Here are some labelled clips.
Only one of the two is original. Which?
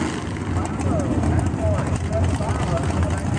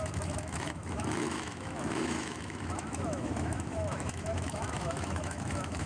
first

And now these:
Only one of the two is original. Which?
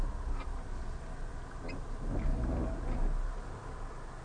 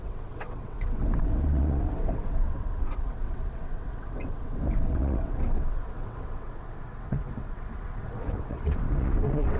first